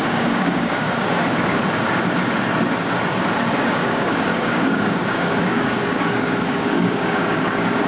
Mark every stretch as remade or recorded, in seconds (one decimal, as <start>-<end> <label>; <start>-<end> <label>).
0.0-1.6 remade; 1.6-3.6 recorded; 3.6-7.9 remade